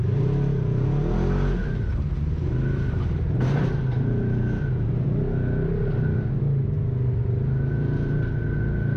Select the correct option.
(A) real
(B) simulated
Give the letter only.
A